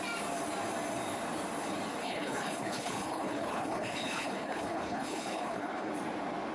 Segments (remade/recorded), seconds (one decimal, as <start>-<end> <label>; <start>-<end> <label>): 0.0-2.0 recorded; 2.0-5.9 remade; 5.9-6.5 recorded